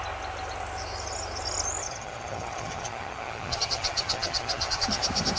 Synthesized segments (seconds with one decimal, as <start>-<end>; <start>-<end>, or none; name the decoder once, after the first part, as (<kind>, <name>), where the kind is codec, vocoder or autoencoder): 1.8-5.0 (vocoder, HiFi-GAN)